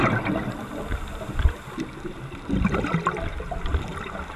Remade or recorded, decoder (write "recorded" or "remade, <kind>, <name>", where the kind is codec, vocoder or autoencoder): recorded